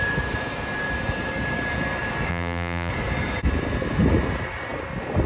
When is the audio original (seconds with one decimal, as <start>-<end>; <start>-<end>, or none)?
0.0-2.3; 2.9-5.3